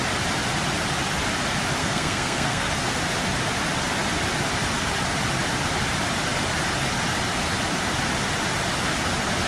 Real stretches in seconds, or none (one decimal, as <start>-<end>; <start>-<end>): 0.0-1.8; 2.7-9.5